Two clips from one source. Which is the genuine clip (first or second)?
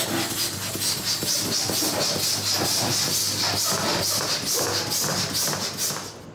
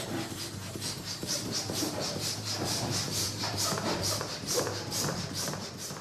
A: first